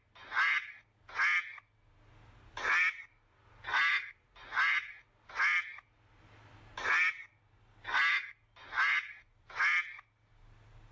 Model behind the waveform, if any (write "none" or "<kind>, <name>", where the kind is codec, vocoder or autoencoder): none